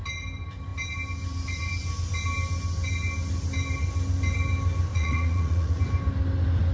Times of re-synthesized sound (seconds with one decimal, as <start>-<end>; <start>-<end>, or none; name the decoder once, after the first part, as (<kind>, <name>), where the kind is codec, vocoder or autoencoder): 4.9-5.8 (vocoder, Vocos)

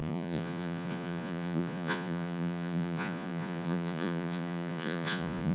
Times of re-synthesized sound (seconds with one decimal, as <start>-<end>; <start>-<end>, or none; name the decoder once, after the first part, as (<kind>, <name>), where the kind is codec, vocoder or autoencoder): 0.0-5.5 (vocoder, Vocos)

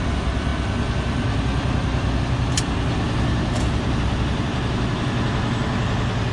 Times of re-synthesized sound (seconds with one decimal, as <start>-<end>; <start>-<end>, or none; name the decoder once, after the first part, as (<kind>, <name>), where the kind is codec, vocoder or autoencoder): 3.5-4.6 (vocoder, BigVGAN v2)

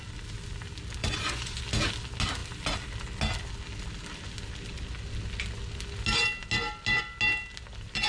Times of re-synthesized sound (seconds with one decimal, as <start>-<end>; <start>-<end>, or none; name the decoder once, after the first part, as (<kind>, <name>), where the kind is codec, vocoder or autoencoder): 1.0-1.6 (vocoder, Vocos)

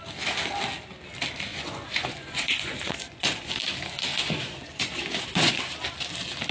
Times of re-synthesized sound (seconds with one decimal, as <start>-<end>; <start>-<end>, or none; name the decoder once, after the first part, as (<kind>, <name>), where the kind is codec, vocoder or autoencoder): 1.5-3.5 (vocoder, Vocos); 4.1-5.5

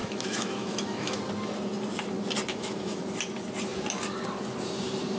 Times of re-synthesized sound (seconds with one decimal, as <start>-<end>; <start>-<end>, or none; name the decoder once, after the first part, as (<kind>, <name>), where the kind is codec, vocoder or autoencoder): 0.0-1.2 (autoencoder, DAC-VAE); 2.5-3.0

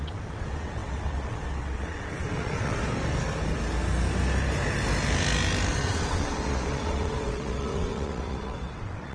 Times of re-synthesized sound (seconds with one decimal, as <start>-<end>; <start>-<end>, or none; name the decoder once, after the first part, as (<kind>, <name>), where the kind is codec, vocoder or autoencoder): 0.0-2.8 (vocoder, WaveNeXt); 5.7-9.1